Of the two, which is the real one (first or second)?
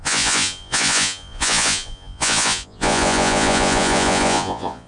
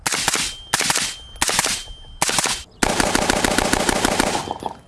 second